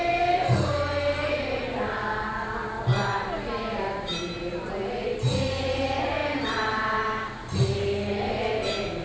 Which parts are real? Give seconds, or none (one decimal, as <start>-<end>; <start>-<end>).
0.0-9.0